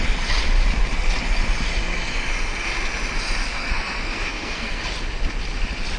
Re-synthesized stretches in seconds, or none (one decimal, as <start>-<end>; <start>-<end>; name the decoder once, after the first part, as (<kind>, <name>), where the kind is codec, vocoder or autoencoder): 3.4-4.8 (codec, SNAC)